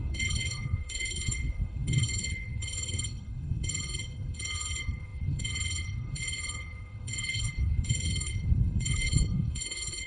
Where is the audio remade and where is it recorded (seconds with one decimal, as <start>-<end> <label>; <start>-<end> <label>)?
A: 0.0-10.1 remade